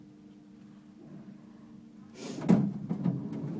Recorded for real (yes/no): yes